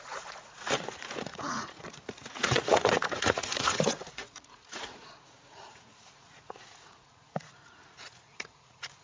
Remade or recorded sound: remade